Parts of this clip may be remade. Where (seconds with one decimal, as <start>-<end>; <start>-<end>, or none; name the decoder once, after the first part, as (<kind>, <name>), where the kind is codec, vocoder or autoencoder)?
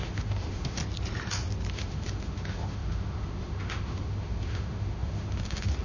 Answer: 0.0-0.8 (autoencoder, DAC-VAE); 1.7-5.8